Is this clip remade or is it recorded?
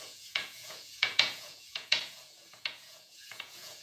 remade